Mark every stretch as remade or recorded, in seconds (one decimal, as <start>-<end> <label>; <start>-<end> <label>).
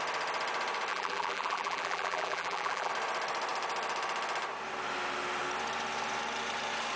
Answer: 0.0-0.9 recorded; 0.9-2.9 remade; 2.9-7.0 recorded